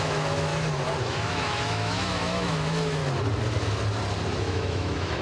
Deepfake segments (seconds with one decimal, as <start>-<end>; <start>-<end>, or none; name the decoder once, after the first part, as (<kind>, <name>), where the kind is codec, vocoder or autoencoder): 0.0-0.5 (autoencoder, DAC-VAE); 1.0-3.0; 4.4-5.2

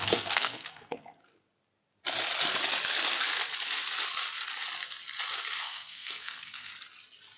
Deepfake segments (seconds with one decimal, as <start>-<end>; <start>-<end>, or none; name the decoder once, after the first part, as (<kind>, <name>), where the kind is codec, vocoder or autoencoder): 0.0-1.2 (codec, SNAC); 5.6-6.7

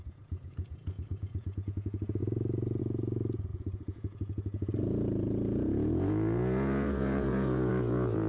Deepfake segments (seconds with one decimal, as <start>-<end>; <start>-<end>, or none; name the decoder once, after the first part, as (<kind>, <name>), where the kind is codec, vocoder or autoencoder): 0.0-8.3 (vocoder, Vocos)